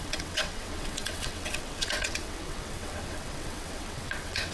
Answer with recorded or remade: remade